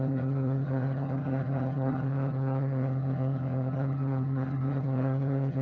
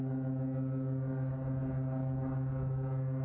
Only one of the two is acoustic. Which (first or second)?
second